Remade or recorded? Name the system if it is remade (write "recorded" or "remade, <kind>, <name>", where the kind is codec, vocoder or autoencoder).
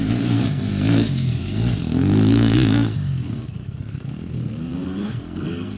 remade, codec, SNAC